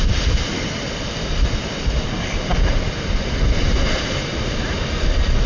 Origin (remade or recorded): recorded